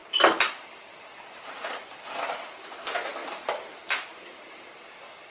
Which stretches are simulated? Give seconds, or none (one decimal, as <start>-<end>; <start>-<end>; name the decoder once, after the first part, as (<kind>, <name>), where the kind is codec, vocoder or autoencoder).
none